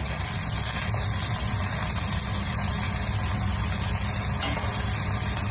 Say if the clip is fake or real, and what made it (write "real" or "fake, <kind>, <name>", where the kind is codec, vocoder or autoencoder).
real